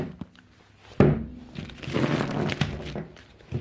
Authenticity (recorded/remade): recorded